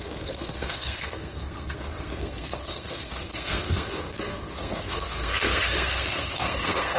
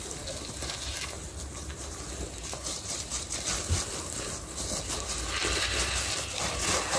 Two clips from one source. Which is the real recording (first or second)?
second